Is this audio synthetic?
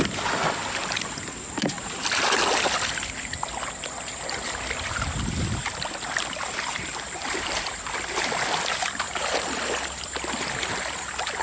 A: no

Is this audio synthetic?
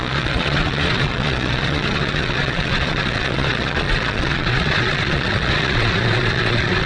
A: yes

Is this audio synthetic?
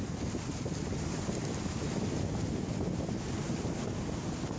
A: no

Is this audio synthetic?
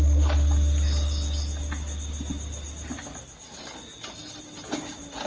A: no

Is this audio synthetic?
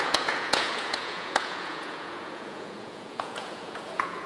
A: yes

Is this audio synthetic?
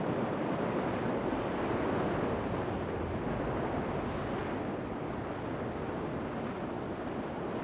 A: no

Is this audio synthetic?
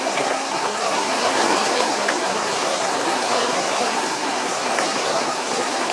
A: yes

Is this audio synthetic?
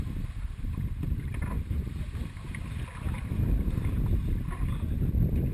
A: no